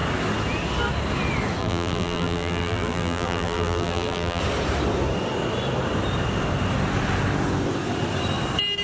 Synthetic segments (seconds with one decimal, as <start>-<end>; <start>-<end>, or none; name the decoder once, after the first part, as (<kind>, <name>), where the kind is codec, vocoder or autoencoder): 1.6-4.4 (vocoder, BigVGAN v2)